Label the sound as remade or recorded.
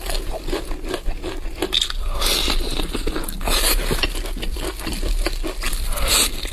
recorded